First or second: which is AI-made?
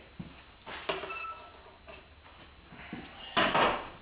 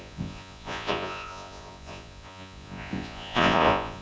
second